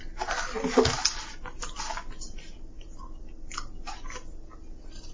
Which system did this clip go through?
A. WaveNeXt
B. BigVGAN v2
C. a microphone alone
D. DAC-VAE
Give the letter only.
C